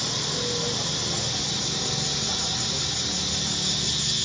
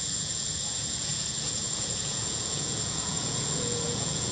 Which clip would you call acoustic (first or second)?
first